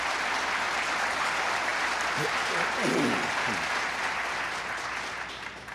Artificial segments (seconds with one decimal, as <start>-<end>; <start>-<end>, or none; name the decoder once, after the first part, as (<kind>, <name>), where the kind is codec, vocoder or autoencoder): none